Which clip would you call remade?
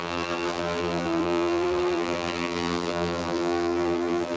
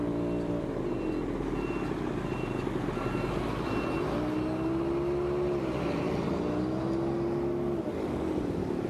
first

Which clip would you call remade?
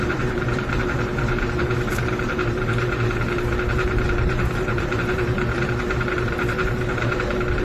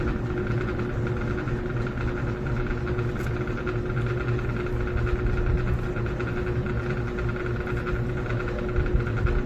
first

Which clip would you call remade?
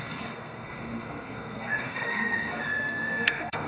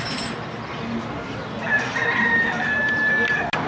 first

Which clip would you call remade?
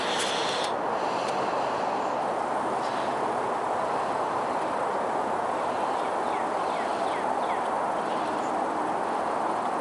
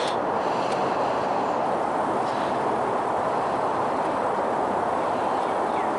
second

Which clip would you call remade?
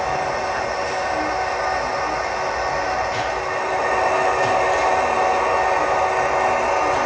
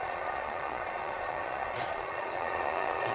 second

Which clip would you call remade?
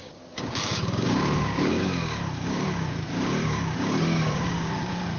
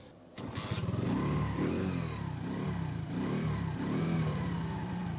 first